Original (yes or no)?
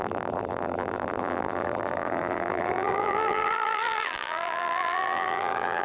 no